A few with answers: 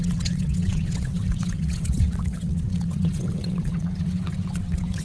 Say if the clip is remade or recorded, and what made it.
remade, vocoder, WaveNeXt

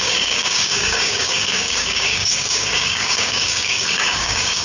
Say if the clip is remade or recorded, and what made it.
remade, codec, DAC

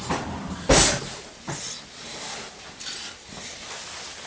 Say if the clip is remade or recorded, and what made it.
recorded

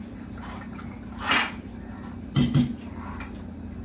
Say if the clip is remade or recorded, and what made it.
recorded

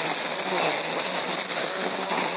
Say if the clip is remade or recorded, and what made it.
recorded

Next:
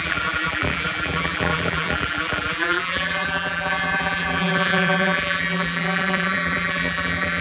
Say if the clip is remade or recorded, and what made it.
remade, vocoder, BigVGAN v2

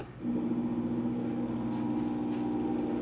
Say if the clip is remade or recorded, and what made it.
recorded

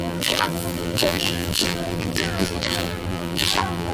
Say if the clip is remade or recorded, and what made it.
remade, vocoder, BigVGAN v2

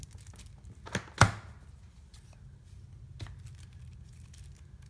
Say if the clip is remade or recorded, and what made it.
recorded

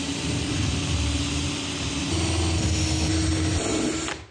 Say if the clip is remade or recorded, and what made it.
recorded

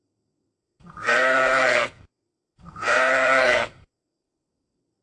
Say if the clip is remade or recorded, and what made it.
remade, codec, SNAC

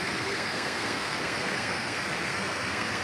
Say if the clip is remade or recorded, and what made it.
remade, codec, SNAC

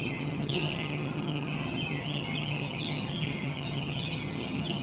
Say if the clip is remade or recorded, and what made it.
remade, vocoder, HiFi-GAN